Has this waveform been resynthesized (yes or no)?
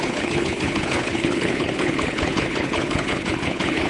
yes